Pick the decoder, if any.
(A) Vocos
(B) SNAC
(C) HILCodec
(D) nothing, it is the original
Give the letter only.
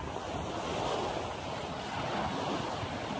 D